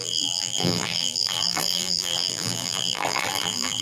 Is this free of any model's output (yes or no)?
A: no